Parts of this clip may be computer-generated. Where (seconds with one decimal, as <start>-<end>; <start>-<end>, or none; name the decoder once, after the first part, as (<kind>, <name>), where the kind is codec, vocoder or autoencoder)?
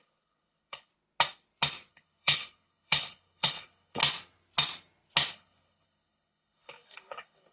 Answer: 0.0-0.9 (codec, HILCodec); 1.9-4.0; 5.3-7.5